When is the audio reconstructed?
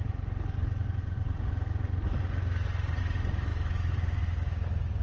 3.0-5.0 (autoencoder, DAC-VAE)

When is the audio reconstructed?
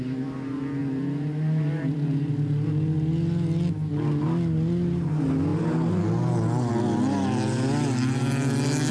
none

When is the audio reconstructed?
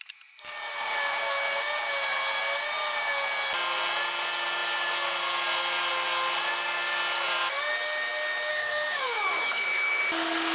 8.5-10.0 (autoencoder, DAC-VAE)